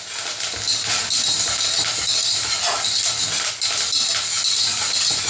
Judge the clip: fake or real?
real